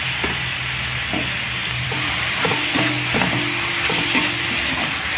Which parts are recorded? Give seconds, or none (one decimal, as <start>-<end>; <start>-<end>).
0.0-1.6; 2.5-5.2